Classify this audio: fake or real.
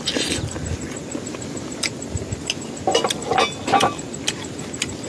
real